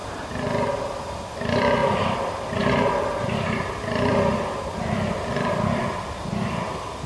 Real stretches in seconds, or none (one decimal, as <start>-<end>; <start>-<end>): 0.0-1.8; 5.8-7.1

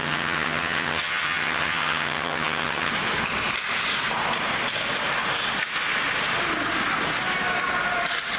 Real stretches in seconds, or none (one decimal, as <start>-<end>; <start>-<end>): 2.9-8.4

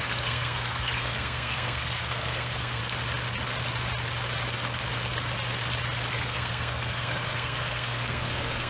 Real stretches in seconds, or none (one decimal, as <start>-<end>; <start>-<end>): 2.8-6.1

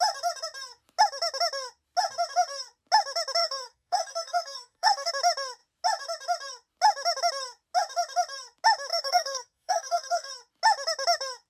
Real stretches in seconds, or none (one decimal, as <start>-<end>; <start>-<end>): 0.0-3.4; 5.1-8.9; 10.3-11.5

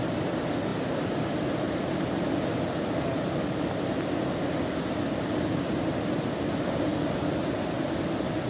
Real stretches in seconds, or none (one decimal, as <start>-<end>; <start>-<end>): 0.0-8.5